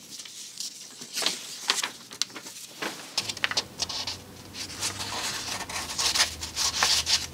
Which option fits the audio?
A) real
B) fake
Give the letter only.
A